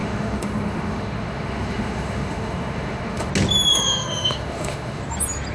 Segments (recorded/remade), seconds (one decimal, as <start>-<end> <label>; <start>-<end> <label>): 0.0-3.3 remade; 3.3-3.7 recorded; 3.7-5.0 remade; 5.0-5.5 recorded